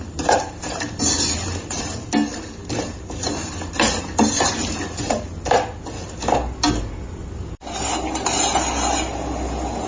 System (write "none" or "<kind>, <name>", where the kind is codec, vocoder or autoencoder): none